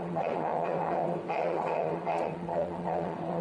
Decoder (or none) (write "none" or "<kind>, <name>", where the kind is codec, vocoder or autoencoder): vocoder, WaveNeXt